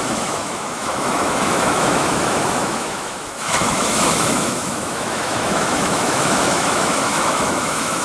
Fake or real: fake